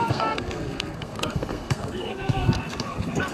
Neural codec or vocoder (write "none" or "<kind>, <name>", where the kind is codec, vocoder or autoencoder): codec, SNAC